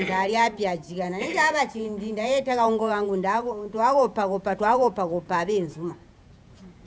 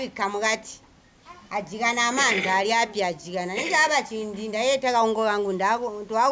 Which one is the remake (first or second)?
first